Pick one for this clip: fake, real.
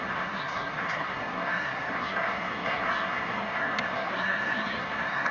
fake